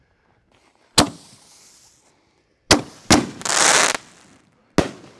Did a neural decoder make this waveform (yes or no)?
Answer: no